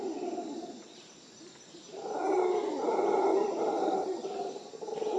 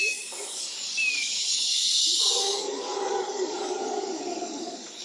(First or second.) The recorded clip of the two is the first